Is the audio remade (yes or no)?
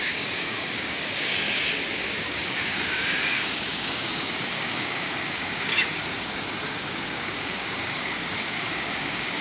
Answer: yes